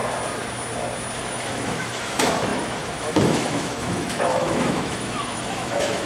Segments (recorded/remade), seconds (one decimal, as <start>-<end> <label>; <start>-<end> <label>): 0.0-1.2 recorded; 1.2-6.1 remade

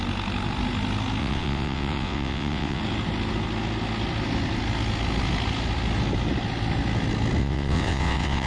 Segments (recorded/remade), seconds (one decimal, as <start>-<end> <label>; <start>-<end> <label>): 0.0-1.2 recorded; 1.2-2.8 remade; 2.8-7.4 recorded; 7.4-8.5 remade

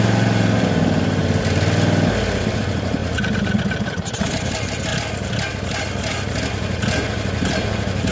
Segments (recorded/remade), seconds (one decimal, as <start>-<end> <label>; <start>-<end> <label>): 0.0-1.2 remade; 1.2-2.6 recorded; 2.6-4.9 remade; 4.9-6.5 recorded; 6.5-8.1 remade

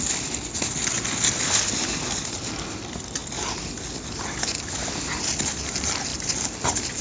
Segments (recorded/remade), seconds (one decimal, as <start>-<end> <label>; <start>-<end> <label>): 0.0-7.0 recorded

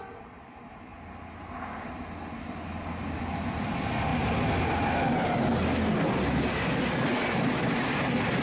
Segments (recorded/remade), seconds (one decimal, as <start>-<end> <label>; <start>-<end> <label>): 0.0-8.4 recorded

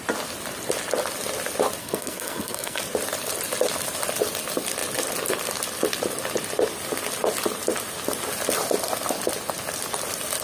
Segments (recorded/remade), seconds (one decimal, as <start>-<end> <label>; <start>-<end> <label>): 0.0-1.8 recorded; 1.8-2.8 remade; 2.8-10.4 recorded